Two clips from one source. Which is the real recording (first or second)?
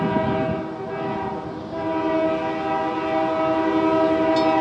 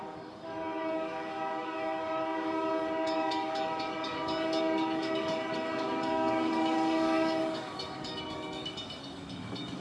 first